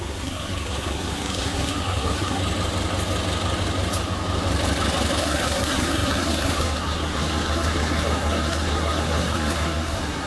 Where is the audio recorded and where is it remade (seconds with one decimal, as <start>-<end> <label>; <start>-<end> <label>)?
0.0-2.4 remade; 2.4-5.2 recorded; 5.2-10.3 remade